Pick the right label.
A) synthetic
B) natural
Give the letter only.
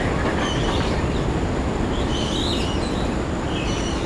B